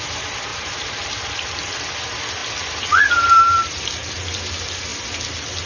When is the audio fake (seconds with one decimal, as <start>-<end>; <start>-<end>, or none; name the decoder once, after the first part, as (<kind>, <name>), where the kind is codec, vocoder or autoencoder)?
0.5-1.8 (vocoder, BigVGAN v2)